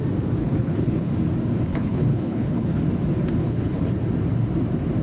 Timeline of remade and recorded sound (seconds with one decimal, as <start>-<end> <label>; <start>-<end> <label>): 0.0-0.4 recorded; 0.4-1.1 remade; 1.1-1.7 recorded; 1.7-2.8 remade; 2.8-3.4 recorded; 3.4-3.9 remade; 3.9-5.0 recorded